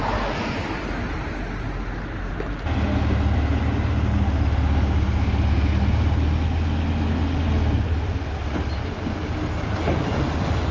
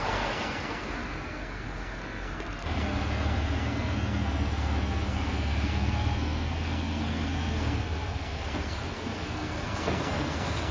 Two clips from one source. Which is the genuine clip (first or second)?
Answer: first